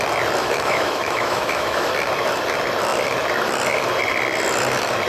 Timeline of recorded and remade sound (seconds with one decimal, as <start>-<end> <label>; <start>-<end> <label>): 0.0-0.4 recorded; 0.4-1.9 remade; 1.9-5.1 recorded